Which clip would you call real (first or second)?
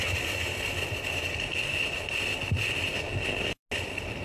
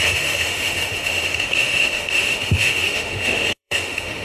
first